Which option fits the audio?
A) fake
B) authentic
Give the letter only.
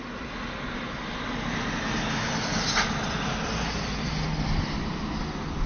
B